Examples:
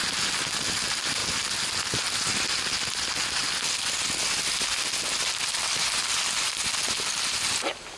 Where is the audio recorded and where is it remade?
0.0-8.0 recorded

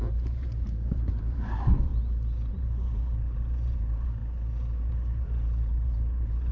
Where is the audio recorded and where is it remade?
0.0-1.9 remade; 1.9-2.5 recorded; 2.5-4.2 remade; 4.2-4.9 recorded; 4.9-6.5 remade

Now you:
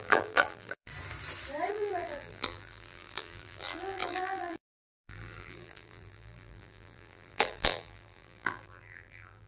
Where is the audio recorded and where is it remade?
0.0-0.9 remade; 0.9-1.7 recorded; 1.7-9.5 remade